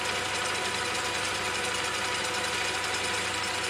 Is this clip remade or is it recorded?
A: remade